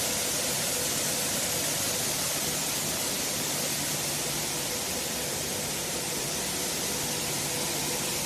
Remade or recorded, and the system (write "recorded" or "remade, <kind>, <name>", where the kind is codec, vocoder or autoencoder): recorded